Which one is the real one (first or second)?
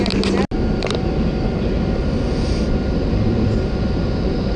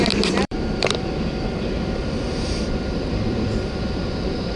first